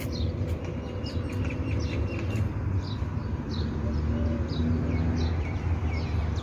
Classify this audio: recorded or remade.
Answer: recorded